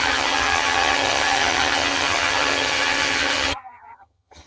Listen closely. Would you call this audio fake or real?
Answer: fake